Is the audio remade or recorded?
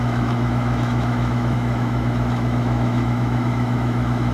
remade